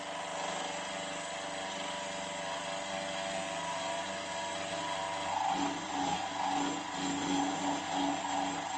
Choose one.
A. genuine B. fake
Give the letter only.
A